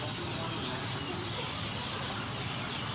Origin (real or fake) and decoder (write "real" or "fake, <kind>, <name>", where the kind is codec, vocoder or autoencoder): real